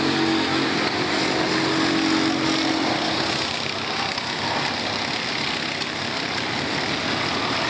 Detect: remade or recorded recorded